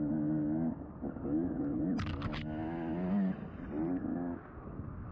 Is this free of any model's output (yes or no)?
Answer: yes